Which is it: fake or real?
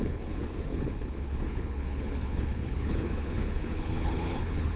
fake